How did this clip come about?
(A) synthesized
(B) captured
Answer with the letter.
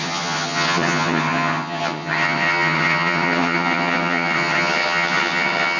A